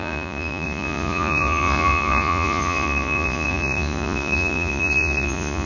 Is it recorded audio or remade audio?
remade